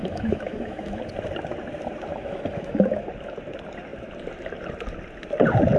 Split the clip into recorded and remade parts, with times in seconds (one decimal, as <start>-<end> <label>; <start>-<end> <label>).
0.0-1.0 remade; 1.0-2.1 recorded; 2.1-3.1 remade; 3.1-5.8 recorded